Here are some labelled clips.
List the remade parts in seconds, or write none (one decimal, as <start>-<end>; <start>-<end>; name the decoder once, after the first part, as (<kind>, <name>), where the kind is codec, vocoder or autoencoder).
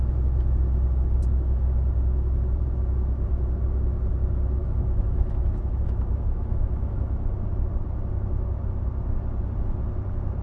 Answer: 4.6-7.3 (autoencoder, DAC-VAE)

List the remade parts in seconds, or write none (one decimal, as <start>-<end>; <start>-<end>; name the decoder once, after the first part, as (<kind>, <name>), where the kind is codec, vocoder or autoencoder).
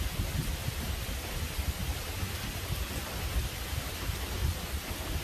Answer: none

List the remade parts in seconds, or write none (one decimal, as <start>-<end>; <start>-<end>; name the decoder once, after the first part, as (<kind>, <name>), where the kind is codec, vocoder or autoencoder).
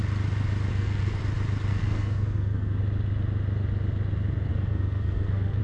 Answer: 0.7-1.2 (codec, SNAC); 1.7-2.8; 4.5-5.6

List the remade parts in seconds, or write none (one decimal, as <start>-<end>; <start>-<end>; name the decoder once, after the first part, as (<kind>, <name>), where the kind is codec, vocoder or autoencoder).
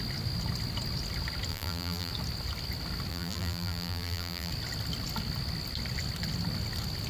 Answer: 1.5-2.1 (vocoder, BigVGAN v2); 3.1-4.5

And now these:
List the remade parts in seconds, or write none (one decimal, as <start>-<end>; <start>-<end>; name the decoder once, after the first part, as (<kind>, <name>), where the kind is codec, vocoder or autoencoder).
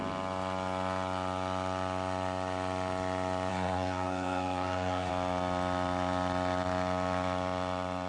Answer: 3.5-5.1 (codec, SNAC)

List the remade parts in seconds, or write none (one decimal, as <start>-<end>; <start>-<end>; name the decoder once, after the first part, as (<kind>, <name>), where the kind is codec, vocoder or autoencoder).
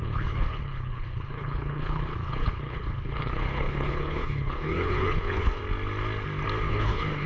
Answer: 0.0-5.6 (codec, HILCodec); 6.7-7.3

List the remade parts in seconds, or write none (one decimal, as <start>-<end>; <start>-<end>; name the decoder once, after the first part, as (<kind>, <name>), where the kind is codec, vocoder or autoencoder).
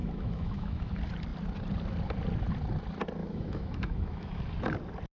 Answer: 0.0-0.9 (autoencoder, DAC-VAE); 3.2-4.4